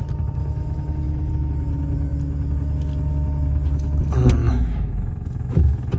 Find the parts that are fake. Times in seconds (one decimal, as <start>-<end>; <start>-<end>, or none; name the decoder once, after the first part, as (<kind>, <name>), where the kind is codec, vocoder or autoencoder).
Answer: 0.4-1.3 (autoencoder, DAC-VAE); 4.4-6.0